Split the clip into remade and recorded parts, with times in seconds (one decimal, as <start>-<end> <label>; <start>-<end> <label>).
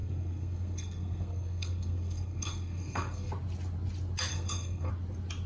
0.0-3.3 remade; 3.3-4.3 recorded; 4.3-4.9 remade; 4.9-5.5 recorded